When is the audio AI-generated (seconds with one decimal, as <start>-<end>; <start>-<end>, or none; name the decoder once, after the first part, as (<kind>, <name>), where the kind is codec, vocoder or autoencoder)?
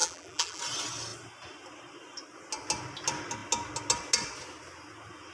0.0-0.6 (vocoder, BigVGAN v2)